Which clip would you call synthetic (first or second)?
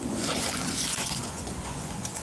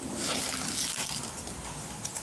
first